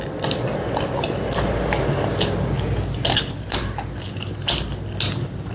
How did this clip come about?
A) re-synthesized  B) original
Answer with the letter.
B